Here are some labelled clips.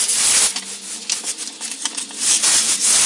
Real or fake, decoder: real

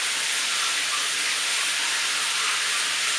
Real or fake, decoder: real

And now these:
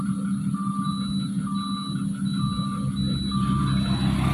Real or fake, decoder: real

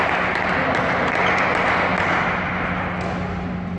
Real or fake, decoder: real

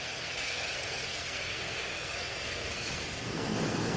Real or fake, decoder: fake, codec, SNAC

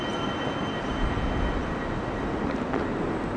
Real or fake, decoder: real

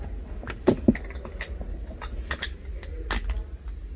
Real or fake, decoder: real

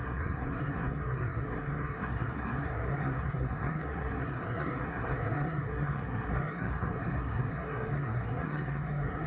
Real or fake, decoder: fake, codec, SNAC